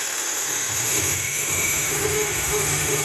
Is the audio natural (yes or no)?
no